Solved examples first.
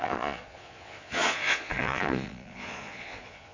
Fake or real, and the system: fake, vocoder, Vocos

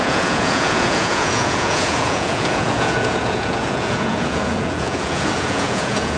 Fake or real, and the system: fake, vocoder, Vocos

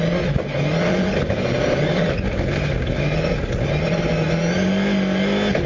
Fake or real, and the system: real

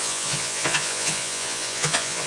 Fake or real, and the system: fake, vocoder, Vocos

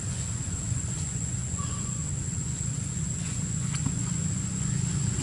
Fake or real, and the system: fake, vocoder, Vocos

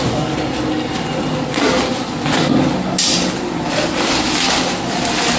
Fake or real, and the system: real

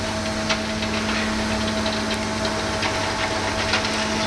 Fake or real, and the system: real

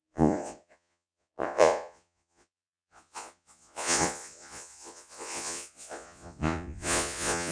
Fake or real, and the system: fake, vocoder, Vocos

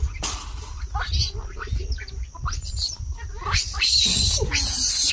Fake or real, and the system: real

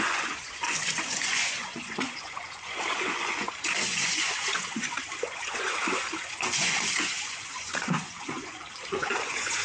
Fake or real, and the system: fake, vocoder, Vocos